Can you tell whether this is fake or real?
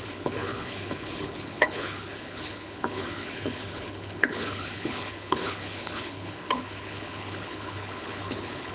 fake